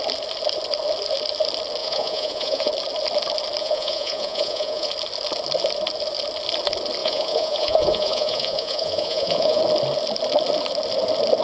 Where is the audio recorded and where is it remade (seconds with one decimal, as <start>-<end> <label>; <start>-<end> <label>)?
0.0-1.8 recorded; 1.8-2.7 remade; 2.7-3.6 recorded; 3.6-4.9 remade; 4.9-7.0 recorded; 7.0-9.6 remade; 9.6-11.4 recorded